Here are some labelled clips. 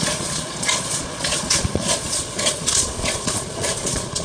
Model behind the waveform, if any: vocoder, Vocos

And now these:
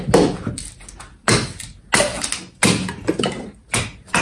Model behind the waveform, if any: none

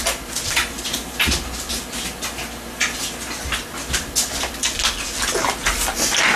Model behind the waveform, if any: none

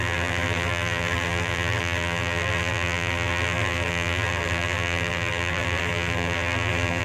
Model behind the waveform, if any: vocoder, BigVGAN v2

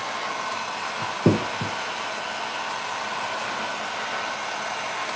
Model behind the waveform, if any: none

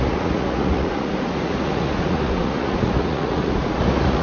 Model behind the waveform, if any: vocoder, Vocos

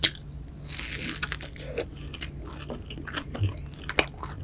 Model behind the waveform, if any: none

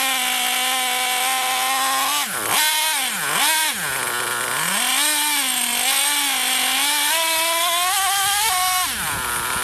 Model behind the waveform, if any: none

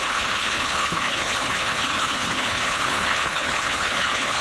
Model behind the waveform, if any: codec, HILCodec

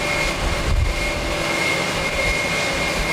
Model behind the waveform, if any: none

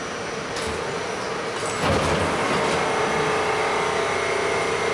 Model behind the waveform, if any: none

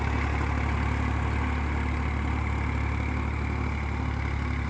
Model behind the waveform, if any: none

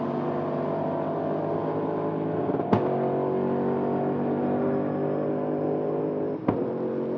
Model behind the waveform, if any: none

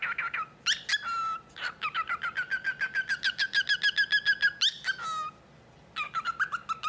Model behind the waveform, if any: none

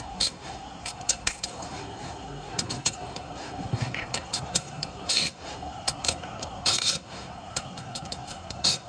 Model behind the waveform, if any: codec, SNAC